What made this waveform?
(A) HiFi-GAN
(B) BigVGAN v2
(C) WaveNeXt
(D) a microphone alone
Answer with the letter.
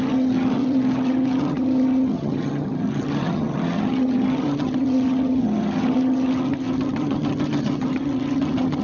A